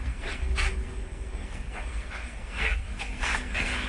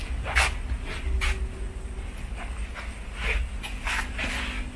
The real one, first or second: second